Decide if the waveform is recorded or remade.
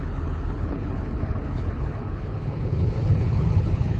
remade